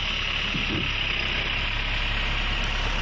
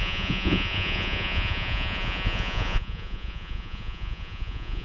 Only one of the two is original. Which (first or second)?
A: first